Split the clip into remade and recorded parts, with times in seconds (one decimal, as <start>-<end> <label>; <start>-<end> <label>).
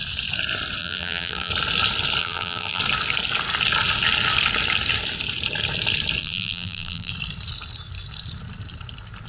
0.0-0.8 recorded; 0.8-1.5 remade; 1.5-2.2 recorded; 2.2-2.8 remade; 2.8-6.2 recorded; 6.2-7.1 remade; 7.1-9.3 recorded